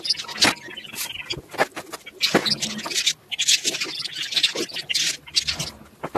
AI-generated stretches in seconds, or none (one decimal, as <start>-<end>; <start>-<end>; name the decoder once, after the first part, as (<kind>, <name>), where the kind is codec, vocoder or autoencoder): none